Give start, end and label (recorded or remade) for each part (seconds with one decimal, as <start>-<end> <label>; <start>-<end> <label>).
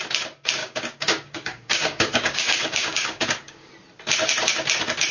0.0-0.6 recorded; 0.6-3.7 remade; 3.7-5.1 recorded